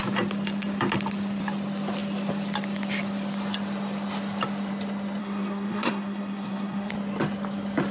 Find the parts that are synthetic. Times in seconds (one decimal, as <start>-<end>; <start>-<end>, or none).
5.2-6.9